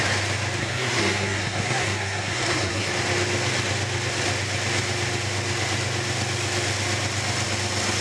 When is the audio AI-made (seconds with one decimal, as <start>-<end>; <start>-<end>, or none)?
0.6-2.9